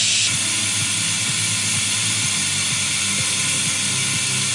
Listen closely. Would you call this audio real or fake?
real